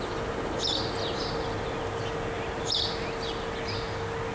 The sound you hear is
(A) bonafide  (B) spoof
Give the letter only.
A